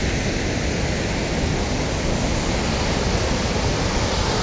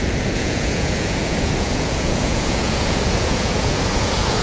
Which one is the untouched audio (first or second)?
first